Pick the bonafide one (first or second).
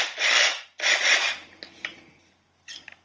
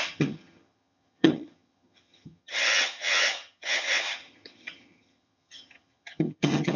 first